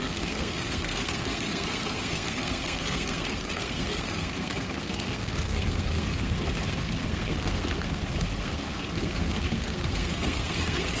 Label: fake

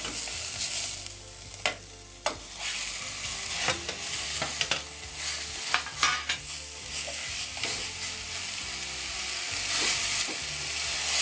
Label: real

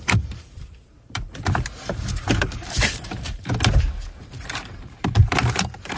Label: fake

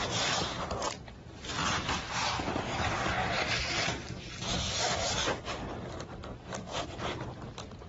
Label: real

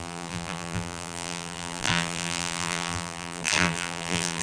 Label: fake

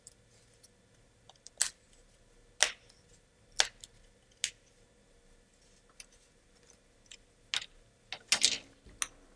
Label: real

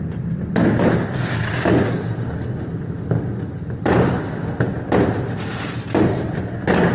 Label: real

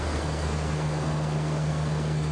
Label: fake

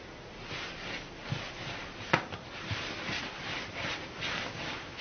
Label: real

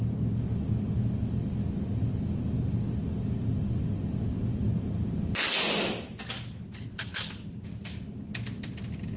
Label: real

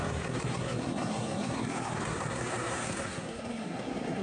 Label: fake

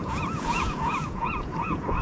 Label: fake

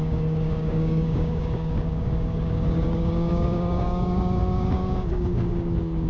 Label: fake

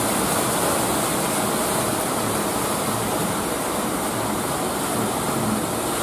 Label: real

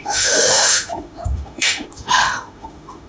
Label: fake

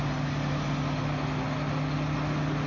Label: real